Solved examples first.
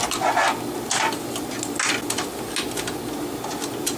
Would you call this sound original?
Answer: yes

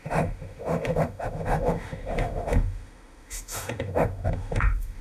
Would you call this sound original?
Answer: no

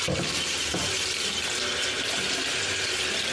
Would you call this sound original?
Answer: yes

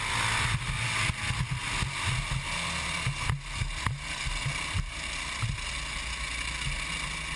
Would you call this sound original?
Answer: yes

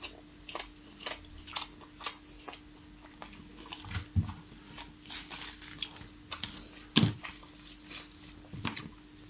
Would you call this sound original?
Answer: yes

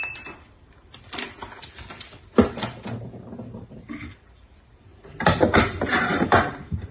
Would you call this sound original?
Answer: no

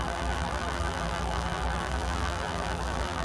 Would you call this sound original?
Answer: no